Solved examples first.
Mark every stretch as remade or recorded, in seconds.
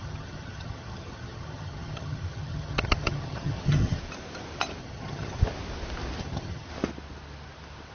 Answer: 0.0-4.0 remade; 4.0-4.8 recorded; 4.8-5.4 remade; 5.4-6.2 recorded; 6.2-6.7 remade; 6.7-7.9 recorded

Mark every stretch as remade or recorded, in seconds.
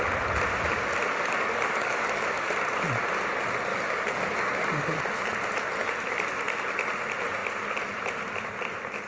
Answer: 0.0-1.4 recorded; 1.4-2.5 remade; 2.5-3.7 recorded; 3.7-5.0 remade; 5.0-9.1 recorded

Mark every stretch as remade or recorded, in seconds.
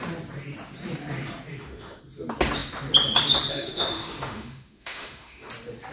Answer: 0.0-1.5 recorded; 1.5-2.0 remade; 2.0-3.5 recorded; 3.5-5.5 remade; 5.5-5.9 recorded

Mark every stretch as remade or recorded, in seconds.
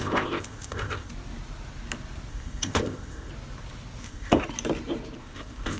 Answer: 0.0-1.1 remade; 1.1-2.3 recorded; 2.3-3.3 remade; 3.3-4.0 recorded; 4.0-4.4 remade; 4.4-5.2 recorded; 5.2-5.8 remade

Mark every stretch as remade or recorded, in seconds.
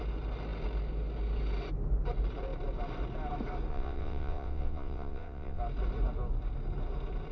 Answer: 0.0-3.7 recorded; 3.7-5.6 remade; 5.6-7.3 recorded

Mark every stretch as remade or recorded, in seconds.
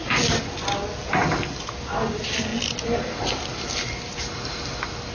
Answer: 0.0-5.1 recorded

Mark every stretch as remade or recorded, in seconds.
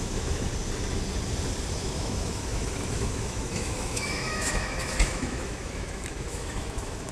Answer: 0.0-0.5 remade; 0.5-1.8 recorded; 1.8-7.1 remade